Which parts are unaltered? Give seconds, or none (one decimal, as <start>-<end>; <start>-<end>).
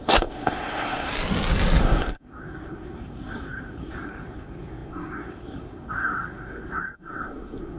1.1-1.8